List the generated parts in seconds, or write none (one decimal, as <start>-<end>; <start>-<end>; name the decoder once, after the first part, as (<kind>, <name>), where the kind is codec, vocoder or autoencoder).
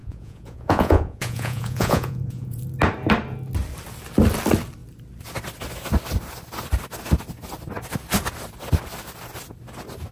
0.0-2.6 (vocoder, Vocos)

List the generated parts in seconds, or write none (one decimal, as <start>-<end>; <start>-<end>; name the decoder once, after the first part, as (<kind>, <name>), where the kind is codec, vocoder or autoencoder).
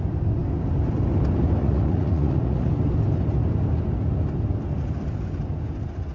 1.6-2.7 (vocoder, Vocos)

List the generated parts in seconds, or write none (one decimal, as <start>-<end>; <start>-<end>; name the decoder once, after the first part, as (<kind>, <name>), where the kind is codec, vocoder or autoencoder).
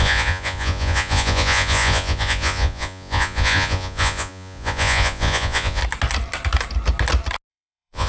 0.0-5.8 (vocoder, Vocos); 7.5-8.1